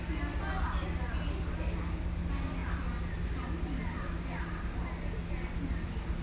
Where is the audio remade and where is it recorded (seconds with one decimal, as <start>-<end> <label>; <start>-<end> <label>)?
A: 0.0-6.2 recorded